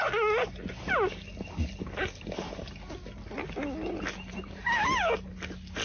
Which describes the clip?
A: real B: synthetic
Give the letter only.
A